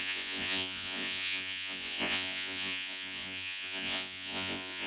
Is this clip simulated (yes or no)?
yes